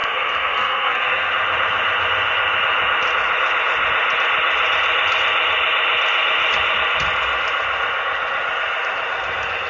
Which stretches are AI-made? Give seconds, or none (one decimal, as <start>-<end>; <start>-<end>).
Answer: 0.0-1.3